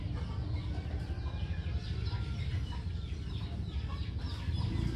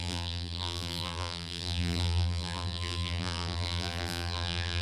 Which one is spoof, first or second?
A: second